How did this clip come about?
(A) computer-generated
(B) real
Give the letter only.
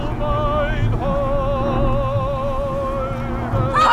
B